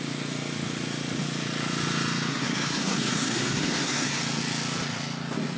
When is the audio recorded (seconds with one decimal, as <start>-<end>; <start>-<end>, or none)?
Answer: 0.0-2.3; 4.2-5.6